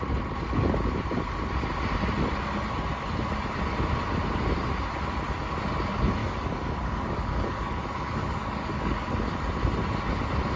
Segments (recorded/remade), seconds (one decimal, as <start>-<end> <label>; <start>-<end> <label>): 0.0-6.2 recorded; 6.2-9.1 remade; 9.1-10.6 recorded